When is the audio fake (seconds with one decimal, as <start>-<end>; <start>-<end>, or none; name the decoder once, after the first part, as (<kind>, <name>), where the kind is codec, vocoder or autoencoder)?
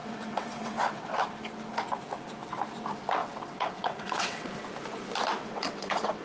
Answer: 0.0-1.1 (vocoder, WaveNeXt); 3.2-4.5; 5.4-6.2